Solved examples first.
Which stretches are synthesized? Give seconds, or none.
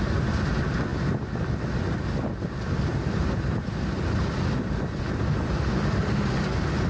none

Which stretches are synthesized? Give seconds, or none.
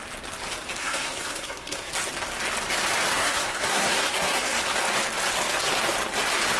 0.8-1.9 (codec, SNAC); 3.1-4.6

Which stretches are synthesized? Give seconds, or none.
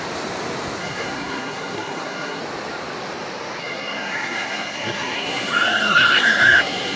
0.8-2.4 (codec, SNAC); 3.6-7.0